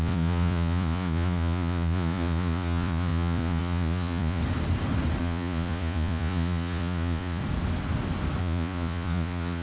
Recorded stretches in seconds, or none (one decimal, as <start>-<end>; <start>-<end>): 4.4-5.2; 7.4-8.4